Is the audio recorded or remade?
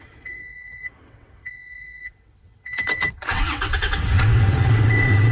remade